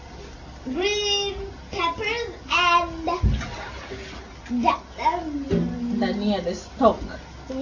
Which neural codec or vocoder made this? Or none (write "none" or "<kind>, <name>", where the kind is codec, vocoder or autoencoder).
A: none